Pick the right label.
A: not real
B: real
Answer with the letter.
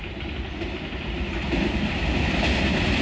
B